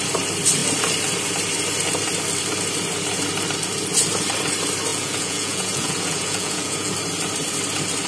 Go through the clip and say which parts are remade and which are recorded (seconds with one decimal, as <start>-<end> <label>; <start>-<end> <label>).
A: 0.0-4.9 recorded; 4.9-6.9 remade; 6.9-8.1 recorded